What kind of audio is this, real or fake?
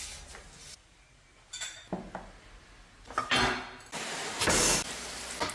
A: real